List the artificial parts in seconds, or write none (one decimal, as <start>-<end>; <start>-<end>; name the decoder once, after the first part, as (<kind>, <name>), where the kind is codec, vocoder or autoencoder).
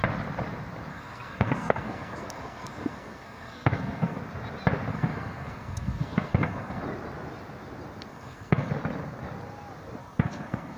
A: 0.9-4.2 (codec, SNAC); 4.9-6.8; 8.1-8.7; 10.0-10.8